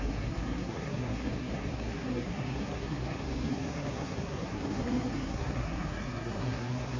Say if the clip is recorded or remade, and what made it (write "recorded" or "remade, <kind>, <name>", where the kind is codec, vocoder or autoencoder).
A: remade, codec, SNAC